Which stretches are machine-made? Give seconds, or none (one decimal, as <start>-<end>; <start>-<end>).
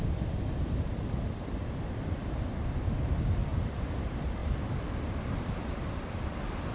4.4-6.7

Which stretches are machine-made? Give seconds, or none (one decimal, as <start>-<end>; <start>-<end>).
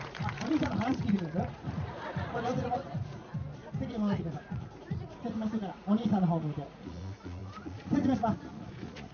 0.0-3.3; 3.9-9.1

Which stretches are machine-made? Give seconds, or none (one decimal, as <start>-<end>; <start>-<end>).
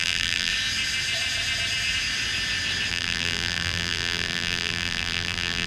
0.0-0.5; 2.9-5.7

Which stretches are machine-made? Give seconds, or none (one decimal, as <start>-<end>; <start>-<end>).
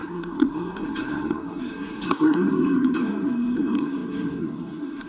0.0-5.1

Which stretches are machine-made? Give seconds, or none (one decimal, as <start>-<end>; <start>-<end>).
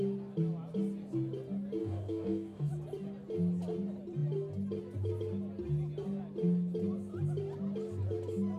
1.8-2.7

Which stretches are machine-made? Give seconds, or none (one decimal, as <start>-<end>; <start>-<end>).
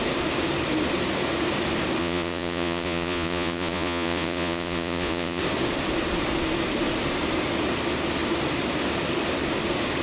2.0-5.4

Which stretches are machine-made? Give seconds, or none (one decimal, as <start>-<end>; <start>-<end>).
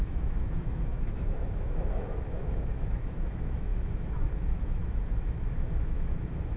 0.0-6.6